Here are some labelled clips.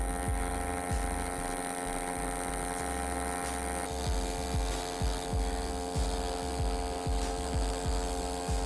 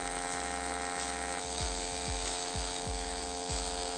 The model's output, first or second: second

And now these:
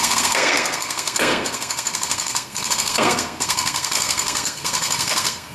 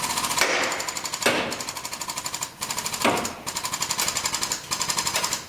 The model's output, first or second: first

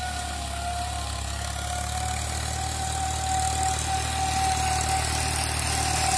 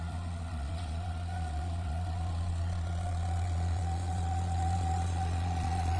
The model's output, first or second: second